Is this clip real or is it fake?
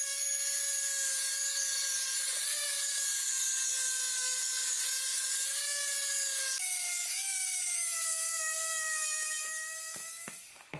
fake